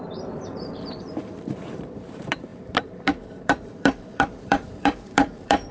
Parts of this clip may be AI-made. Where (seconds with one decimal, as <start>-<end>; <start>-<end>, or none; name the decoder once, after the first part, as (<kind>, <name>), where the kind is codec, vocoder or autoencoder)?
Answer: 0.0-5.7 (vocoder, BigVGAN v2)